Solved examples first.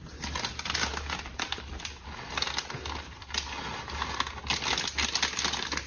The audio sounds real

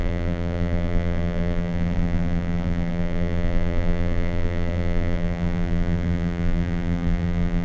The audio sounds fake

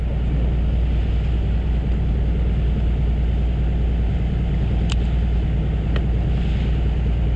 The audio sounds real